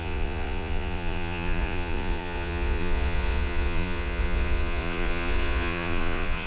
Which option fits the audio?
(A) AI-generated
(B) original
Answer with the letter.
A